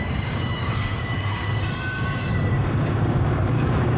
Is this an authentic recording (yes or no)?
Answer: no